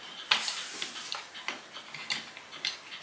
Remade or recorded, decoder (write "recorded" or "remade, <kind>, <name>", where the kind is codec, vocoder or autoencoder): recorded